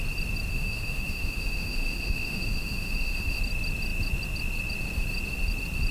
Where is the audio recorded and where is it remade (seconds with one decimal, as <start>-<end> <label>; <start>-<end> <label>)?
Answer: 0.0-0.5 recorded; 0.5-3.4 remade; 3.4-5.9 recorded